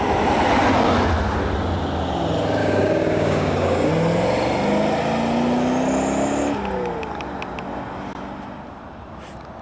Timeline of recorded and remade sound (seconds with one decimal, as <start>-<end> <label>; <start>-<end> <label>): 0.0-2.6 recorded; 2.6-3.9 remade; 3.9-9.6 recorded